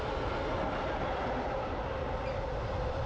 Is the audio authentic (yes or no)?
yes